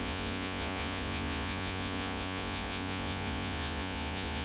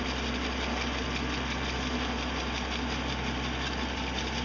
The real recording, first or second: second